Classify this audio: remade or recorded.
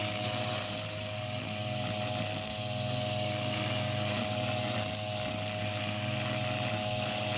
recorded